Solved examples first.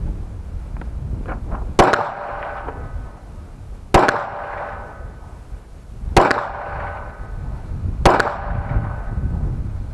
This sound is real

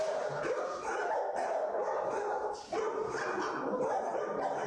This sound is real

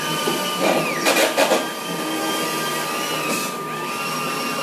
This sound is real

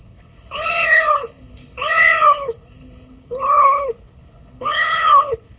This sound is fake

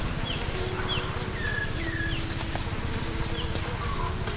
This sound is real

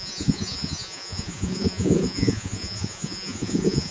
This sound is fake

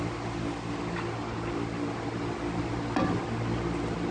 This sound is real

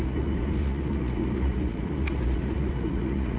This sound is fake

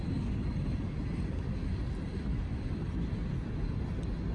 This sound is real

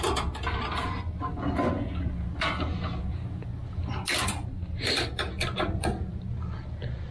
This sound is real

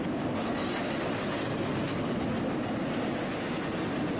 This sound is real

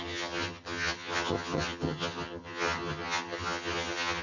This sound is fake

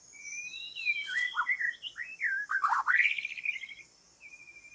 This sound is real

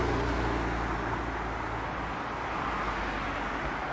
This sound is real